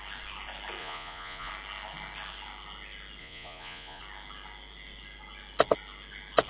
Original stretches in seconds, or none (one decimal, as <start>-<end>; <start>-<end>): 0.0-0.8; 1.5-3.2; 4.0-6.5

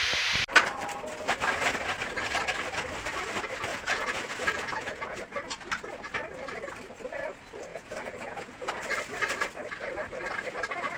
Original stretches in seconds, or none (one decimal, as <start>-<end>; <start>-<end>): 0.0-3.7; 5.2-7.7; 8.7-11.0